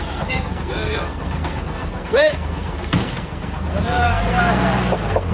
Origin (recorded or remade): remade